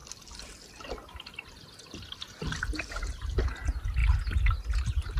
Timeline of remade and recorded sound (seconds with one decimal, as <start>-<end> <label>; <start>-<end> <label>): 0.0-5.2 recorded